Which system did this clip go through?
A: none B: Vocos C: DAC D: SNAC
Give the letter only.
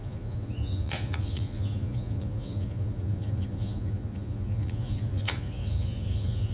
B